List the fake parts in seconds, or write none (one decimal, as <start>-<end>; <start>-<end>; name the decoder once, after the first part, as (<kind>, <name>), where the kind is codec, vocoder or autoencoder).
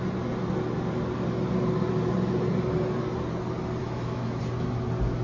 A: 3.8-4.4 (autoencoder, DAC-VAE)